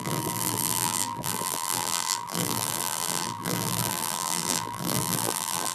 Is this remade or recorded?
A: remade